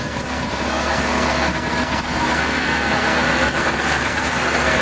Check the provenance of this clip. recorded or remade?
remade